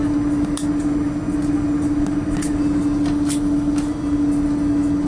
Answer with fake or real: real